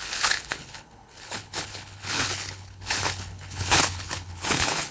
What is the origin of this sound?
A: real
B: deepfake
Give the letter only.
B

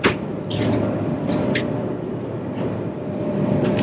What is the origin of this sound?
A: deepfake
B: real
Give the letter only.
B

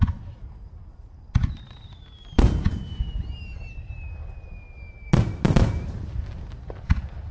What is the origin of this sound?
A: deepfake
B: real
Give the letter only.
B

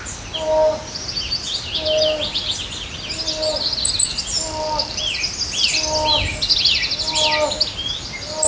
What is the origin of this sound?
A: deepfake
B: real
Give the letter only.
B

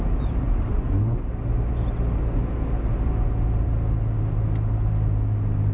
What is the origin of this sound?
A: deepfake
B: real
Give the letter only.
B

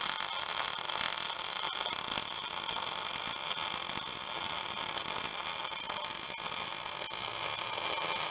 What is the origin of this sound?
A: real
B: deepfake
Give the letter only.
A